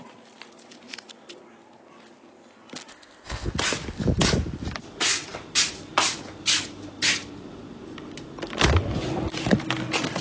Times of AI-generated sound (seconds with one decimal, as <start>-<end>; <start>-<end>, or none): 2.9-3.5

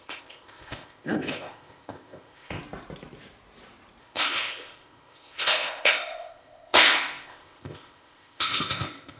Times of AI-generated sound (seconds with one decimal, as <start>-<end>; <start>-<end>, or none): 0.0-2.6; 4.0-9.2

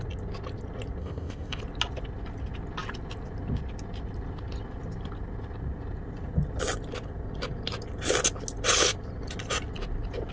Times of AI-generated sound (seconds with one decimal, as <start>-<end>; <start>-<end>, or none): 1.0-1.6

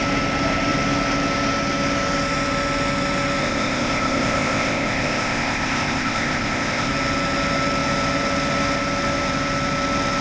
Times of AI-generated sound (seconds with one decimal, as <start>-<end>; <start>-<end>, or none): 3.4-6.9

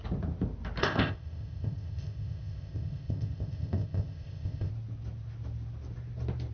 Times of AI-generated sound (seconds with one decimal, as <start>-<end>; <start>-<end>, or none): 0.8-4.7